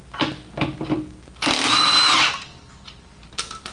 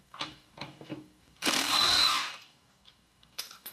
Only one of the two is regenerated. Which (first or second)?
second